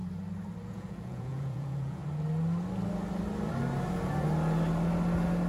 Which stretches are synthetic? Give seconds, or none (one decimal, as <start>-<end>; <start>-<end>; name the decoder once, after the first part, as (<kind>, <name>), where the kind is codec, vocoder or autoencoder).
0.7-2.0 (vocoder, Vocos)